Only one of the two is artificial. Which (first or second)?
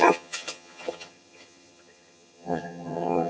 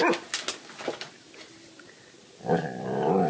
first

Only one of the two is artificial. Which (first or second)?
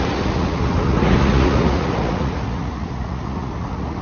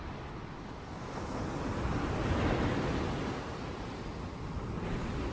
first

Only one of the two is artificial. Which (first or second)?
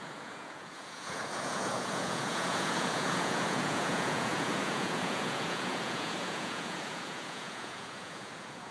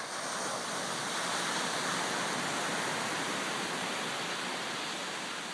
first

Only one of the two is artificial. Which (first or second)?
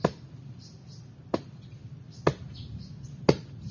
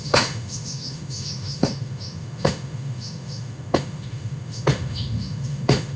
second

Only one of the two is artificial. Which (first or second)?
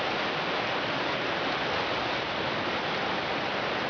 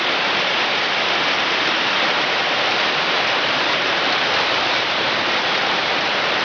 second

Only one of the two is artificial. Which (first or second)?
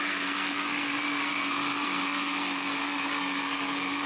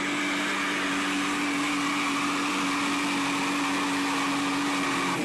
first